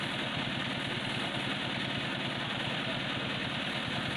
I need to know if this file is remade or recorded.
recorded